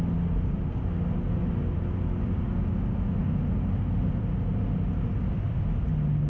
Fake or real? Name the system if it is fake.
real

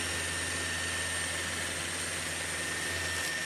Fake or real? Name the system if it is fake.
real